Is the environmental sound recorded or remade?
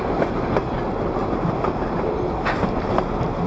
recorded